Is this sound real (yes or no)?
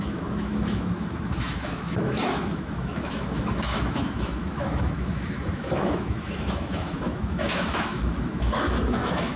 no